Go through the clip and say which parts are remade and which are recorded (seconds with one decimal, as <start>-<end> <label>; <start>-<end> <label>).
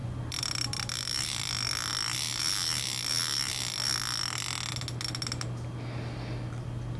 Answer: 0.0-1.4 remade; 1.4-7.0 recorded